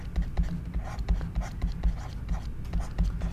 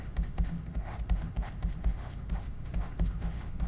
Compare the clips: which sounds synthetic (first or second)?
second